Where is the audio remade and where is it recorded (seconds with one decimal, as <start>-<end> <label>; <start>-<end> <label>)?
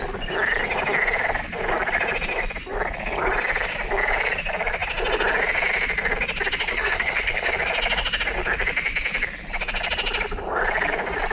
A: 0.0-6.7 recorded; 6.7-7.5 remade; 7.5-11.3 recorded